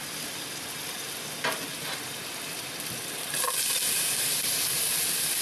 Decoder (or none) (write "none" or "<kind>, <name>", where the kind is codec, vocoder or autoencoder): none